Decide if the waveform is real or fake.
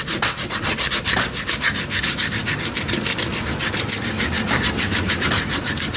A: real